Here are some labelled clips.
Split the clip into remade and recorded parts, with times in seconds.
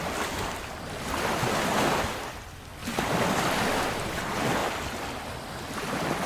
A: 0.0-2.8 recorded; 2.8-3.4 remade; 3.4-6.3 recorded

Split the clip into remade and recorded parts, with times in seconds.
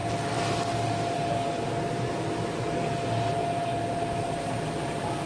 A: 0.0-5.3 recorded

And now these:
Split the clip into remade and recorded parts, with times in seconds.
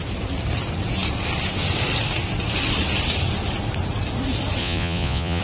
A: 0.0-4.6 recorded; 4.6-5.4 remade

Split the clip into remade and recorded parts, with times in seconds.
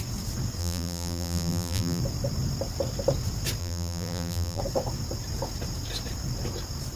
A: 0.0-0.6 recorded; 0.6-2.0 remade; 2.0-3.6 recorded; 3.6-4.6 remade; 4.6-7.0 recorded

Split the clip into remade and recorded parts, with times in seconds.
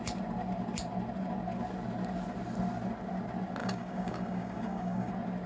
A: 0.0-3.6 recorded; 3.6-5.1 remade; 5.1-5.5 recorded